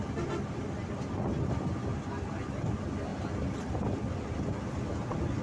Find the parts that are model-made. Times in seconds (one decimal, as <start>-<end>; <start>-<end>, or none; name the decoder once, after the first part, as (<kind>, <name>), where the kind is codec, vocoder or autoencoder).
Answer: none